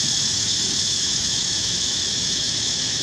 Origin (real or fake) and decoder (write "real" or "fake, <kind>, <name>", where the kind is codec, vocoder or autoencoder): fake, autoencoder, DAC-VAE